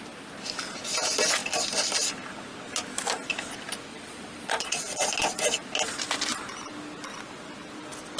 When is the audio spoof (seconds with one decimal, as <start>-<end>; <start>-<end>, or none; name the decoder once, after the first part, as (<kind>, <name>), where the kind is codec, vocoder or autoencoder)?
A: 3.9-5.1 (vocoder, Vocos)